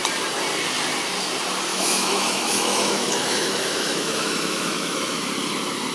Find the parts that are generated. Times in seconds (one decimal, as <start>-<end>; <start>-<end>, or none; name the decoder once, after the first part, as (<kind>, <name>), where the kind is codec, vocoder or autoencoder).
1.7-5.2 (autoencoder, DAC-VAE)